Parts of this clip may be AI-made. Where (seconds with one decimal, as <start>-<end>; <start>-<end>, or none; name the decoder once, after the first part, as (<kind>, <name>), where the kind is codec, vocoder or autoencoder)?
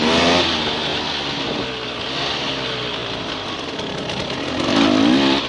none